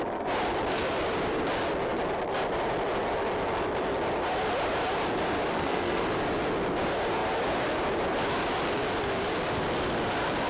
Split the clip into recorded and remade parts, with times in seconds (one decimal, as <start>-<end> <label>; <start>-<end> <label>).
0.0-5.5 recorded; 5.5-6.0 remade; 6.0-10.5 recorded